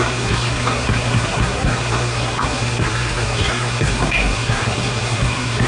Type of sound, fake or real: fake